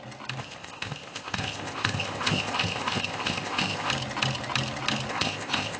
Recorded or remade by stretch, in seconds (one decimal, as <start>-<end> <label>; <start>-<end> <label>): 0.0-0.4 recorded; 0.4-3.9 remade; 3.9-5.1 recorded; 5.1-5.8 remade